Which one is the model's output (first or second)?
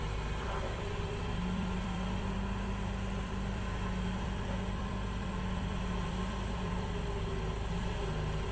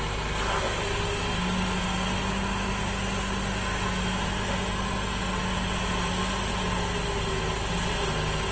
first